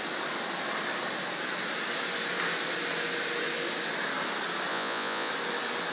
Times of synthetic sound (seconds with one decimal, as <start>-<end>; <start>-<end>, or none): 4.7-5.3